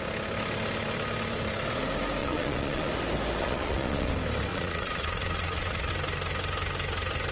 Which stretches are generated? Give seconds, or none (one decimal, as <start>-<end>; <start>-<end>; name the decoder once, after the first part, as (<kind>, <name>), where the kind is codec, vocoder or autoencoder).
2.2-2.9 (vocoder, Vocos); 3.4-4.1; 4.5-5.9